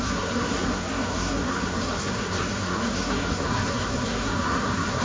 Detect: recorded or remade remade